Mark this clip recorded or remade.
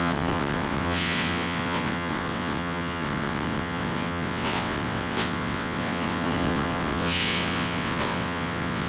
remade